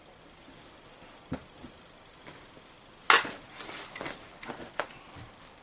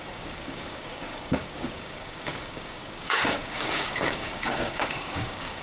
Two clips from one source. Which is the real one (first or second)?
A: first